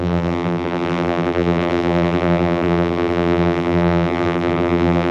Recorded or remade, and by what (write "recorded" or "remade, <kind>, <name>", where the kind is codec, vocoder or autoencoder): remade, vocoder, BigVGAN v2